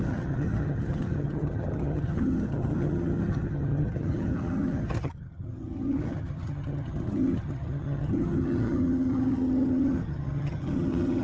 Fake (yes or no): yes